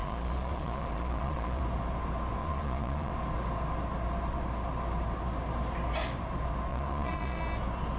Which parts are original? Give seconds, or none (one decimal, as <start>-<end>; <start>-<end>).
1.6-2.4; 3.1-6.7; 7.4-8.0